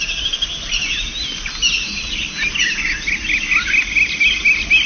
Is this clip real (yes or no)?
yes